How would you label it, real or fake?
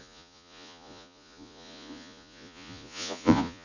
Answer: fake